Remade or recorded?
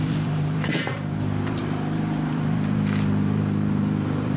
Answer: remade